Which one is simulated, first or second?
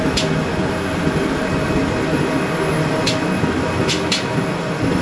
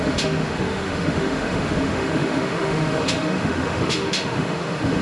second